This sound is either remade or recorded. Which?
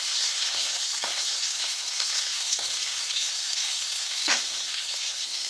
remade